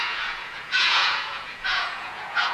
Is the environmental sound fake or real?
fake